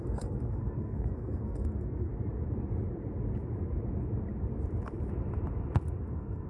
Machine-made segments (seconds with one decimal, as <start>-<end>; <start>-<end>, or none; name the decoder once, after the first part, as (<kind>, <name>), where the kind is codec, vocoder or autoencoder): 0.0-2.1 (codec, SNAC); 6.0-6.5